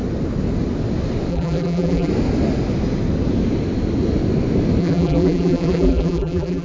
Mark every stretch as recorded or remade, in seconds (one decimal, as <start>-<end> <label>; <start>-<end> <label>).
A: 0.0-1.3 recorded; 1.3-2.1 remade; 2.1-4.8 recorded; 4.8-6.6 remade